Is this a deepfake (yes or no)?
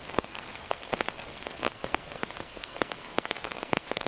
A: yes